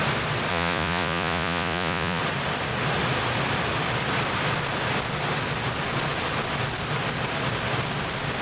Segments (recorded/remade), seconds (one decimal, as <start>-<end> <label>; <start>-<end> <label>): 0.0-0.5 recorded; 0.5-2.2 remade; 2.2-8.4 recorded